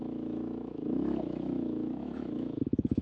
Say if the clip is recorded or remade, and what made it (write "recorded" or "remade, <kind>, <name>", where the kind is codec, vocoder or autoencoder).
remade, autoencoder, DAC-VAE